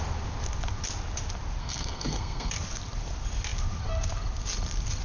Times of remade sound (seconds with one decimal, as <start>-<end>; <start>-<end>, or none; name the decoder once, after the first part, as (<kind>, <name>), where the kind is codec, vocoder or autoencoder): 1.6-2.5 (codec, SNAC)